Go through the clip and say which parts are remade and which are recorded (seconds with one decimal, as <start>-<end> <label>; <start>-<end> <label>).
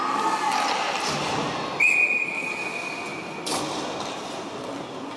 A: 0.0-5.2 recorded